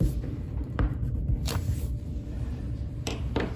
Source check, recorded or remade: remade